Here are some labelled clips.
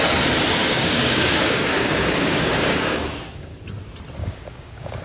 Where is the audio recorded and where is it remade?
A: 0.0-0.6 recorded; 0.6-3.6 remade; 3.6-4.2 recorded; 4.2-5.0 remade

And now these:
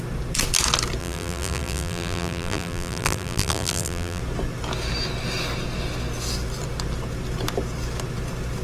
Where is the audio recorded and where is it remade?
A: 0.0-1.0 recorded; 1.0-4.2 remade; 4.2-8.6 recorded

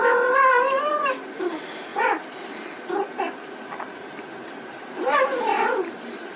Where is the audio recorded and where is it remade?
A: 0.0-1.9 remade; 1.9-4.9 recorded; 4.9-6.4 remade

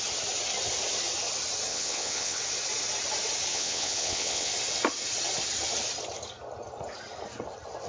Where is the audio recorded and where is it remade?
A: 0.0-1.7 recorded; 1.7-2.4 remade; 2.4-3.5 recorded; 3.5-4.5 remade; 4.5-7.9 recorded